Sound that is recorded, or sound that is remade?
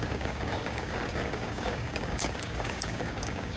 remade